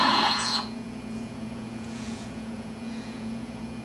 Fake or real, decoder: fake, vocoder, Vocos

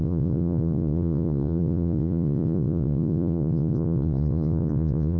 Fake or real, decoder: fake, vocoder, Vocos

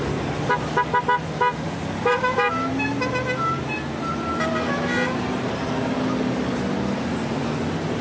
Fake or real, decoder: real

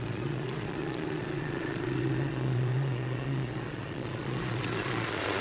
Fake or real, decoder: fake, vocoder, Vocos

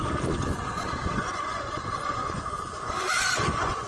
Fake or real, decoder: fake, vocoder, Vocos